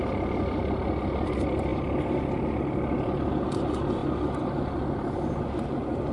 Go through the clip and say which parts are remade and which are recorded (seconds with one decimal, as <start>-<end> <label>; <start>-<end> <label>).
0.0-6.1 recorded